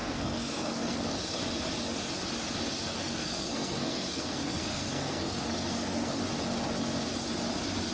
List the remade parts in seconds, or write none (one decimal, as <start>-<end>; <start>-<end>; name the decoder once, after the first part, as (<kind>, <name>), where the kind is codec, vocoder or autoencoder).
0.0-1.4 (codec, SNAC); 2.9-6.2

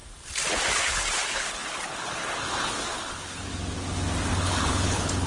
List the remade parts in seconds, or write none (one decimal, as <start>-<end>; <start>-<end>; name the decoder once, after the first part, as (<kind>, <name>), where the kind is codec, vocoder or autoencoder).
0.7-3.5 (codec, HILCodec); 4.3-5.3

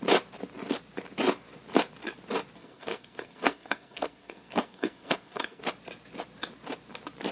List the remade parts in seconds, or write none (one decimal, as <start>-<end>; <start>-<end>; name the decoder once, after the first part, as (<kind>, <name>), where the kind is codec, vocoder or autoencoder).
2.6-5.6 (codec, SNAC)